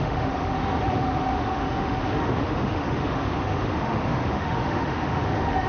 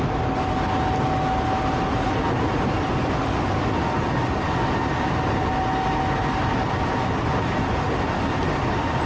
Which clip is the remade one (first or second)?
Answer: first